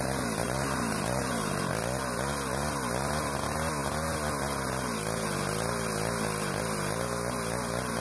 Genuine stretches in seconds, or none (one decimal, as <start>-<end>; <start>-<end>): 0.0-0.4; 1.6-8.0